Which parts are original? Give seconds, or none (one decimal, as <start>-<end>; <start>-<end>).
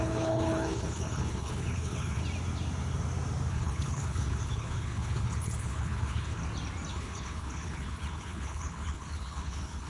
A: 2.2-3.5; 6.4-6.9